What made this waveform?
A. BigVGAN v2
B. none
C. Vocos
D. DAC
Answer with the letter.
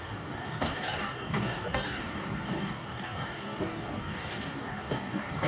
D